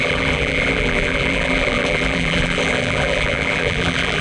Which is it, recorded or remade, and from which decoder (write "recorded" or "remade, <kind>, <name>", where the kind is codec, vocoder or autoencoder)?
remade, vocoder, BigVGAN v2